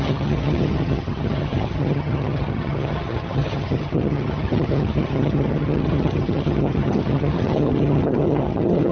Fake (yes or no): yes